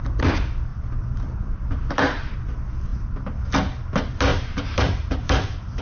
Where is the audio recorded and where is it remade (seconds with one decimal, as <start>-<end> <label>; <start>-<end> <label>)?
0.0-0.7 recorded; 0.7-2.3 remade; 2.3-4.3 recorded; 4.3-5.8 remade